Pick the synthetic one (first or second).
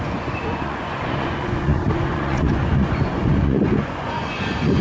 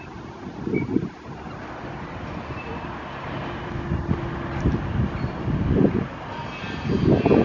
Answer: first